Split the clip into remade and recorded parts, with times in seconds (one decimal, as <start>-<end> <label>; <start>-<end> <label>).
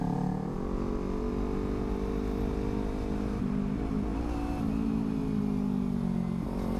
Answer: 0.0-6.8 recorded